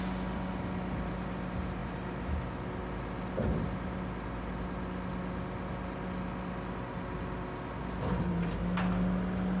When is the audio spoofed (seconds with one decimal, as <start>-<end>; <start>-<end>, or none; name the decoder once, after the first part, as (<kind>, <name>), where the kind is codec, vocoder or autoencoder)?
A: none